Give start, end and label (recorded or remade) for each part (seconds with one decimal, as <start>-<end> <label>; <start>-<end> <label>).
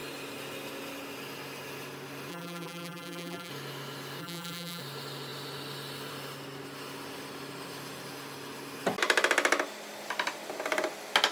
0.0-2.3 recorded; 2.3-3.5 remade; 3.5-4.2 recorded; 4.2-4.8 remade; 4.8-11.3 recorded